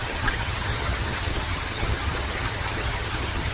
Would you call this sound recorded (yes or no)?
no